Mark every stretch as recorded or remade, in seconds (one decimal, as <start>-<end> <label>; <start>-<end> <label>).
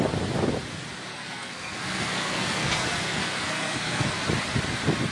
0.0-1.1 recorded; 1.1-4.2 remade; 4.2-5.1 recorded